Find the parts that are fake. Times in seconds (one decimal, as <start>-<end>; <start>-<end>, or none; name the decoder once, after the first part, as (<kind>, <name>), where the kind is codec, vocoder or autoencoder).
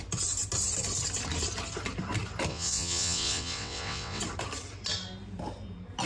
2.5-4.2 (vocoder, WaveNeXt)